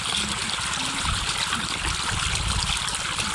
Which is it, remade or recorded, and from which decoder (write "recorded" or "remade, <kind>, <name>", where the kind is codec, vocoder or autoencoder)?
recorded